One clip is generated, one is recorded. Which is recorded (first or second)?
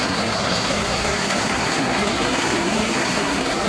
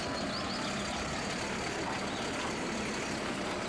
second